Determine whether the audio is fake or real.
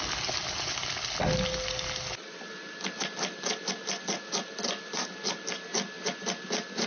real